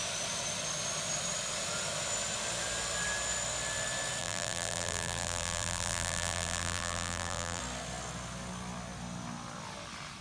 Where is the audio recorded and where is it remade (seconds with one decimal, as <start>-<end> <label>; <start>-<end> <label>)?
0.0-4.2 recorded; 4.2-7.6 remade; 7.6-10.2 recorded